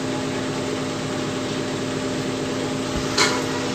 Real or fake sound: real